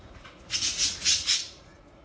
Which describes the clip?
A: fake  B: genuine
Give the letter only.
A